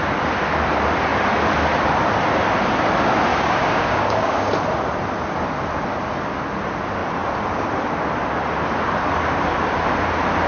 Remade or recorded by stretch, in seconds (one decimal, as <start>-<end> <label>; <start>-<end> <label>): 0.0-3.3 recorded; 3.3-4.5 remade; 4.5-10.5 recorded